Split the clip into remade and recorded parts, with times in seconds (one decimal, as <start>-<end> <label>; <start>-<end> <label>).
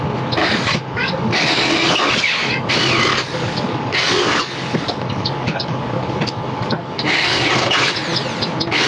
0.0-0.4 recorded; 0.4-2.7 remade; 2.7-3.1 recorded; 3.1-7.5 remade; 7.5-8.9 recorded